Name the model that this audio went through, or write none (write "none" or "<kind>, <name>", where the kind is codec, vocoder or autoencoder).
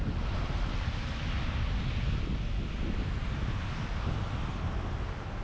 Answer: none